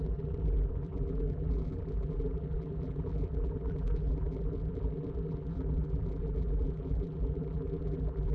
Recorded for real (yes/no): no